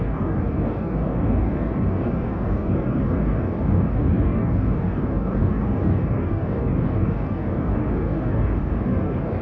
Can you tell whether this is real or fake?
fake